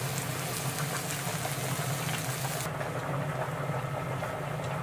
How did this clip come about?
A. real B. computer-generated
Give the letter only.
A